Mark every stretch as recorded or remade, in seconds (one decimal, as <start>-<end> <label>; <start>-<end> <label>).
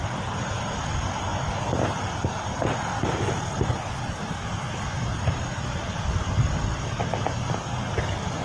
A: 0.0-8.4 recorded